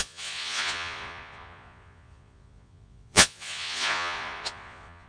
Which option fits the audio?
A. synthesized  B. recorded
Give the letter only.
A